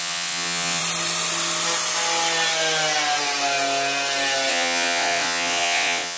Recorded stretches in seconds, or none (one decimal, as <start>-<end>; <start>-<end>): 0.8-4.5